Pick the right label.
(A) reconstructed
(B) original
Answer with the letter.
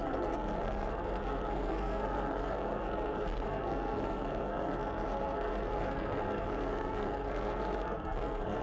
A